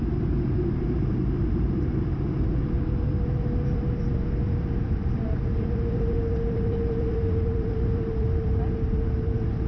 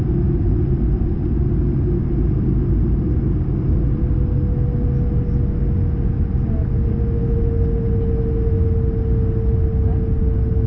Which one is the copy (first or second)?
first